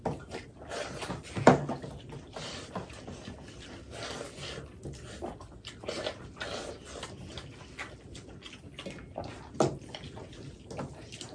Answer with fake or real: real